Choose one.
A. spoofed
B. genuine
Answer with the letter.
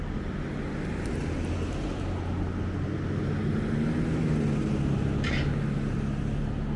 B